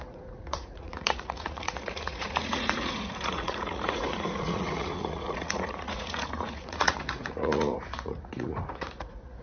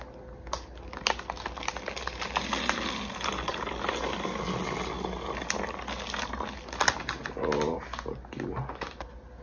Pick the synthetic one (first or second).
first